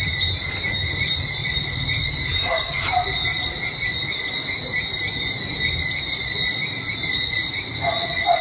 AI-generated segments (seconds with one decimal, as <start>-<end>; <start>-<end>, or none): 1.4-2.1; 7.7-8.4